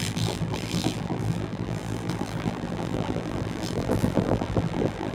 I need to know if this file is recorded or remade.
remade